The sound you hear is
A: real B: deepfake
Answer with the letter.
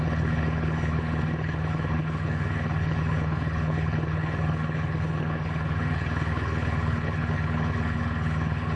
B